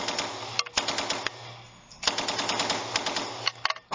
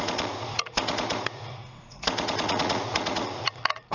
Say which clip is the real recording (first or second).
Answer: first